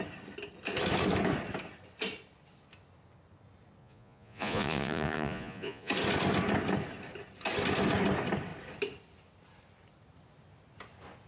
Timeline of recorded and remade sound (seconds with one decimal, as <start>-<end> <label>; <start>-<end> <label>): 0.0-3.8 recorded; 3.8-5.9 remade; 5.9-11.3 recorded